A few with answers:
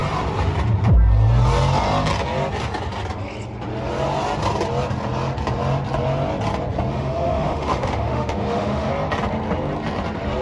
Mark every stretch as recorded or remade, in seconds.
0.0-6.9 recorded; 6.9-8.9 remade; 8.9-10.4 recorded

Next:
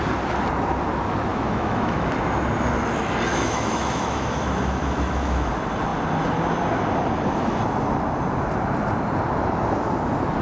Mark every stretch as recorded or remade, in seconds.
0.0-1.3 recorded; 1.3-2.1 remade; 2.1-3.3 recorded; 3.3-5.5 remade; 5.5-10.4 recorded

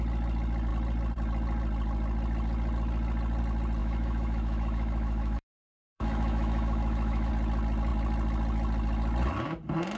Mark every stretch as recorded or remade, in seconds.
0.0-3.8 recorded; 3.8-7.3 remade; 7.3-10.0 recorded

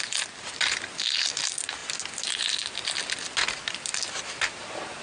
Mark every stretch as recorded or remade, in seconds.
0.0-5.0 recorded

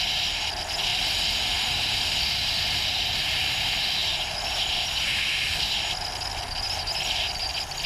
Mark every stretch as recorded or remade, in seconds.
0.0-7.9 recorded

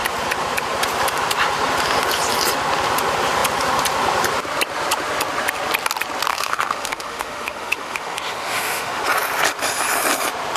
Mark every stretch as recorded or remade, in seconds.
0.0-6.3 recorded; 6.3-9.0 remade; 9.0-10.6 recorded